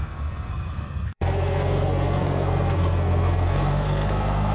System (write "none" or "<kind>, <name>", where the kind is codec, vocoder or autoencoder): codec, SNAC